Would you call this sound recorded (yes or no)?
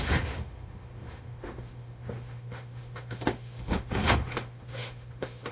no